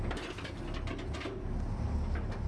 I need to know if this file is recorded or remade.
recorded